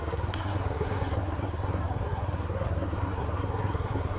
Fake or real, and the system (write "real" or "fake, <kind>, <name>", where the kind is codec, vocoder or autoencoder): fake, codec, SNAC